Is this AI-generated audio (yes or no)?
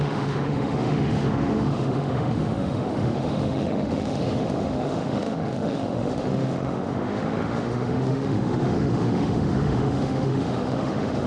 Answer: yes